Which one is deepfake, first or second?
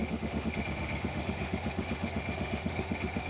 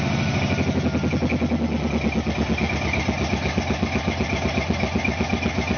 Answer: first